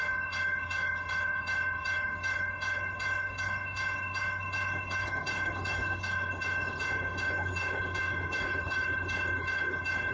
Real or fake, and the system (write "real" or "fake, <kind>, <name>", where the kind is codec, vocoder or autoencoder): fake, codec, HILCodec